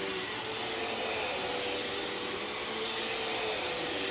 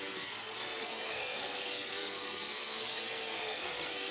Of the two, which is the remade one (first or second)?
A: second